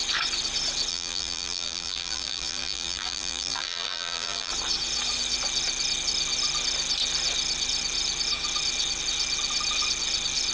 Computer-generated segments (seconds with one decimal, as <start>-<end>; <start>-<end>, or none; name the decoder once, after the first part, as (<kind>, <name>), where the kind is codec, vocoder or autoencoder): 0.9-4.5 (vocoder, BigVGAN v2)